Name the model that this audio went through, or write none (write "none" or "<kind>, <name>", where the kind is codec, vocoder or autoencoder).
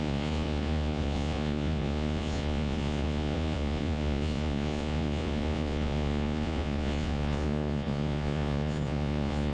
vocoder, Vocos